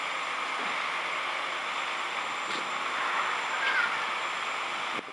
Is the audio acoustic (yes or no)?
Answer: yes